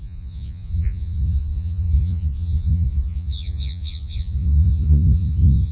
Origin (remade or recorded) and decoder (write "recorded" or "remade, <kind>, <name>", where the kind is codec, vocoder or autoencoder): remade, vocoder, Vocos